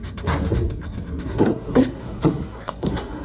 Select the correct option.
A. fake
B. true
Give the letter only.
A